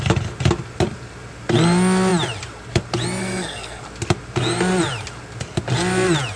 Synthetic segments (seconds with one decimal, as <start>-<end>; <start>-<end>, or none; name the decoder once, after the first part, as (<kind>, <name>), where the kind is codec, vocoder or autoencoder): 3.2-3.8 (codec, SNAC)